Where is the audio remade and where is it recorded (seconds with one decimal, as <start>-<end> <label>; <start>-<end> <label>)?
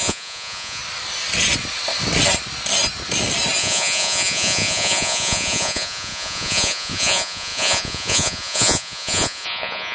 0.0-0.8 remade; 0.8-3.6 recorded; 3.6-9.9 remade